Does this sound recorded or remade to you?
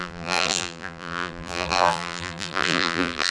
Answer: remade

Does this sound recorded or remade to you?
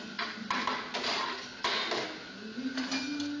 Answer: recorded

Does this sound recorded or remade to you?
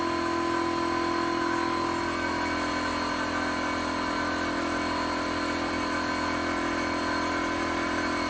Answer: recorded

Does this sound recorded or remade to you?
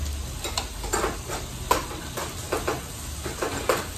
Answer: recorded